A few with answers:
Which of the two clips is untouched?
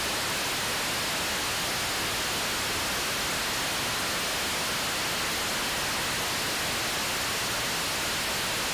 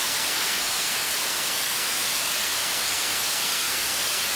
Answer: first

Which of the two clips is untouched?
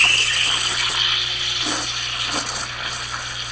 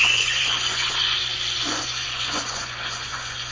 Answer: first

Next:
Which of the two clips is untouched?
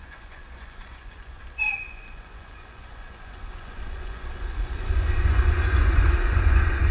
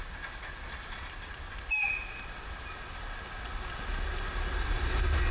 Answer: second